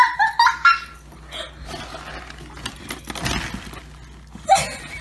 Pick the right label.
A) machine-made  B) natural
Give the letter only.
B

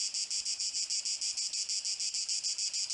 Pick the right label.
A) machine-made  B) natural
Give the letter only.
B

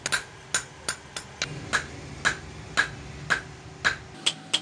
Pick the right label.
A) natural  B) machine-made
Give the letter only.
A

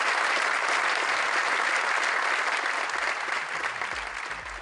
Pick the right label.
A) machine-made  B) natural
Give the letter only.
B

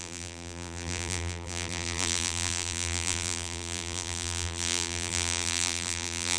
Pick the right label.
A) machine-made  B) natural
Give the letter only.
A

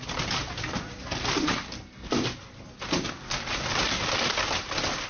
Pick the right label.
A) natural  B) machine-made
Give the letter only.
A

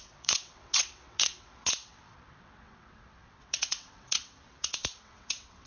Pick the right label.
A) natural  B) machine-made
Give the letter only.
B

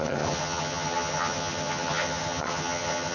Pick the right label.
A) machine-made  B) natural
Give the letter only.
A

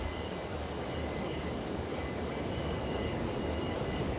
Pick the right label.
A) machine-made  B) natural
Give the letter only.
A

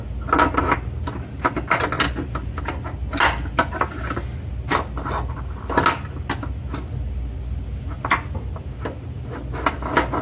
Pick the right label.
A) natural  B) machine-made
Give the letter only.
A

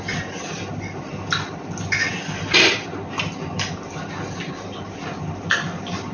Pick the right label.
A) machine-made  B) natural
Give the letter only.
B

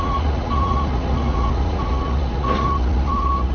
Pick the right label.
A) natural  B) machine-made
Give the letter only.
B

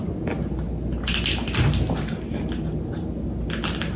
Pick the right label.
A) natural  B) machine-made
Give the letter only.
A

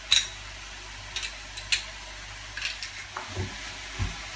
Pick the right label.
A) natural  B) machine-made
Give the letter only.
A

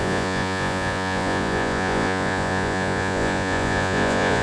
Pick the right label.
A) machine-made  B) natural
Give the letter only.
A